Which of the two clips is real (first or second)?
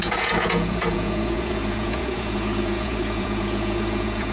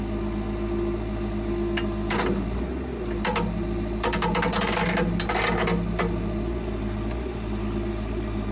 second